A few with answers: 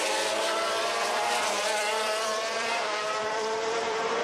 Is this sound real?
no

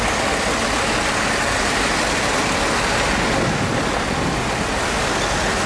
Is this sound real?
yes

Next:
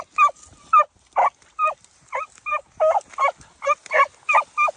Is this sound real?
yes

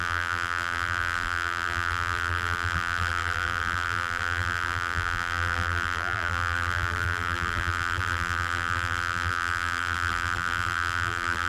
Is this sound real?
no